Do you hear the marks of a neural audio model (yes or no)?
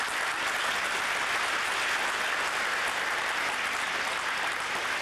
no